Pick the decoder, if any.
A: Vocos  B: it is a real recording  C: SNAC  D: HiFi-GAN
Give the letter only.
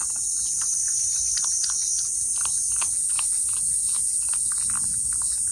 B